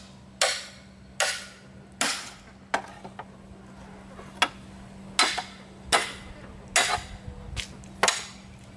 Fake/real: real